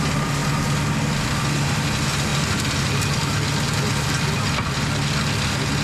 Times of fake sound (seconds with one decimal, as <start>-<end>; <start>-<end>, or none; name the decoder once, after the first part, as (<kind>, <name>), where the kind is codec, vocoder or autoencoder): none